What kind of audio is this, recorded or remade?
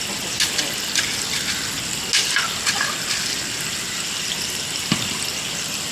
recorded